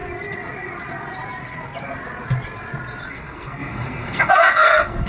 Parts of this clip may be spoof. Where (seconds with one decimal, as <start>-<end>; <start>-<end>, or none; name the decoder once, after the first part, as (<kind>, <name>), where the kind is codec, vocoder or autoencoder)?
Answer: 3.1-5.1 (codec, SNAC)